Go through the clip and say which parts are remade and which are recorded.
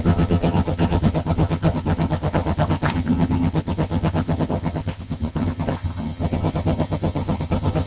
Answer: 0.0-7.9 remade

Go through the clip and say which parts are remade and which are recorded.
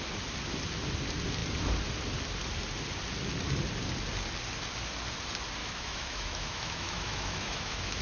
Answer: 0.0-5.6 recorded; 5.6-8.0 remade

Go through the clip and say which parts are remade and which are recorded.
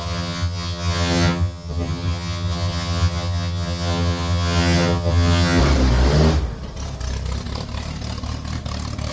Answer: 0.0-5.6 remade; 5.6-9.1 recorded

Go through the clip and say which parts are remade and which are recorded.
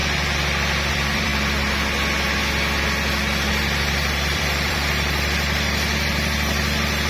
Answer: 0.0-0.9 recorded; 0.9-1.3 remade; 1.3-3.5 recorded; 3.5-7.1 remade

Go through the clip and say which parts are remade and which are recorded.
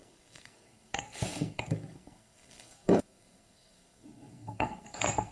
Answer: 0.0-5.3 remade